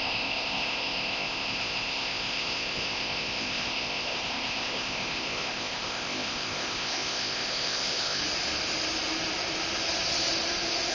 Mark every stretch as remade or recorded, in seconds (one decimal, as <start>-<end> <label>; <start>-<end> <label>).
0.0-8.2 remade; 8.2-10.9 recorded